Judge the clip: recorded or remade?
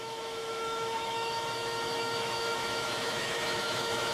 remade